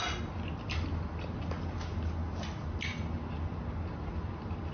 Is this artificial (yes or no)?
no